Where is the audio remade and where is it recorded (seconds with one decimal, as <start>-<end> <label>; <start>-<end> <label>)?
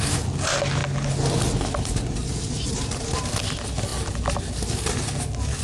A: 0.0-5.6 recorded